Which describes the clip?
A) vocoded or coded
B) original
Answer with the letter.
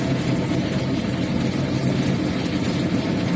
B